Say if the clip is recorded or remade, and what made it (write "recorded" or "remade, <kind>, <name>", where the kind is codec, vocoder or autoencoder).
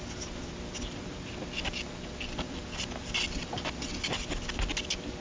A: recorded